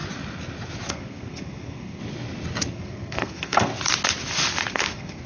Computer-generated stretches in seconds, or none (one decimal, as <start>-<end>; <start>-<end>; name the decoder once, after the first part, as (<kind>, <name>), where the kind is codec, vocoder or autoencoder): 0.9-2.0 (codec, SNAC); 2.7-3.7; 4.7-5.3